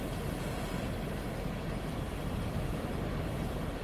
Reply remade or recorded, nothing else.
recorded